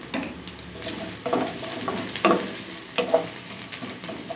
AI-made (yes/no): no